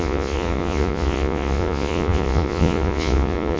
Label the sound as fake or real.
fake